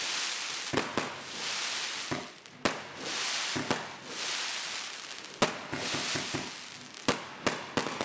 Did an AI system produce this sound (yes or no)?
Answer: no